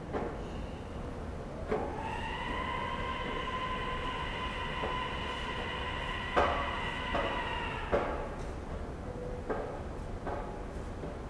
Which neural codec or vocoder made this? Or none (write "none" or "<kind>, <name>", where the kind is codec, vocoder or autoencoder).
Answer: none